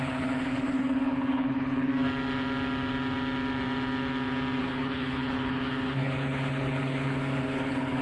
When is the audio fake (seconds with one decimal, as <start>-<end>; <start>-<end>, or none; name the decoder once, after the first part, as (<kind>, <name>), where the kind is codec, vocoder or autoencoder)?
0.0-1.9 (codec, HILCodec); 4.6-8.0